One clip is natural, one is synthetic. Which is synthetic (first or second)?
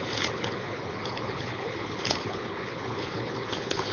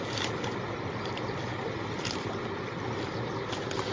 first